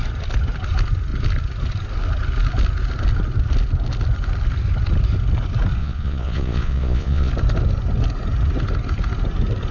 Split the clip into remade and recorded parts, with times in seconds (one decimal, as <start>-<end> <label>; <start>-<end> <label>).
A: 0.0-5.8 recorded; 5.8-7.3 remade; 7.3-9.7 recorded